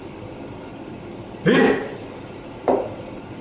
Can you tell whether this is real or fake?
real